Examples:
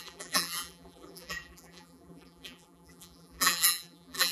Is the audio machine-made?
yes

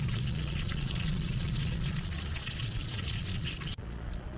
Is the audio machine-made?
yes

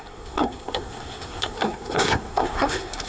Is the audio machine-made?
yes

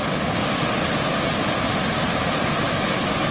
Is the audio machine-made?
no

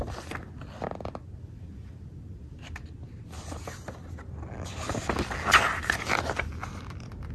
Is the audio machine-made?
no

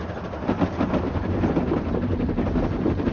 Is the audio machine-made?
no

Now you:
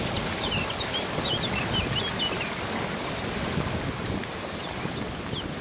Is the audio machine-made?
no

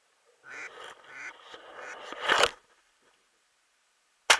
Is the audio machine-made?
no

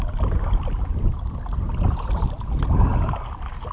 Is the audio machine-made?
no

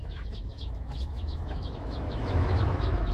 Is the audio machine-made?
yes